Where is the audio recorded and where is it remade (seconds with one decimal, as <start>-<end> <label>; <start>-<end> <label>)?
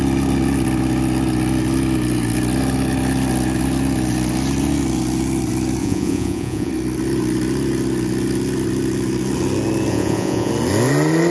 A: 0.0-5.8 recorded; 5.8-6.7 remade; 6.7-9.9 recorded; 9.9-10.5 remade; 10.5-11.3 recorded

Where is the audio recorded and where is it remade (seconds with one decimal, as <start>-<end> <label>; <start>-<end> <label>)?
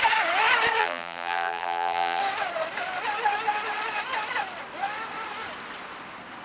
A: 0.0-0.8 recorded; 0.8-2.2 remade; 2.2-6.4 recorded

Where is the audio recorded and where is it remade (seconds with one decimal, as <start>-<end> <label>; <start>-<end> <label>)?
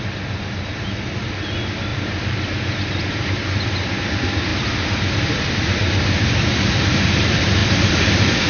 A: 0.0-1.9 recorded; 1.9-3.9 remade; 3.9-4.5 recorded; 4.5-5.4 remade; 5.4-7.6 recorded; 7.6-8.5 remade